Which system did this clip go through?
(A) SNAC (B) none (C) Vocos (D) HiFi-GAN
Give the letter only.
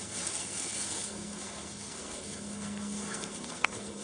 A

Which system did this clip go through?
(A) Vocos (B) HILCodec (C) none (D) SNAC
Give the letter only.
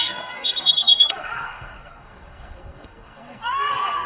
D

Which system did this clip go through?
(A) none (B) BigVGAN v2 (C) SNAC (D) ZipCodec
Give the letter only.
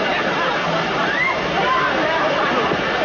A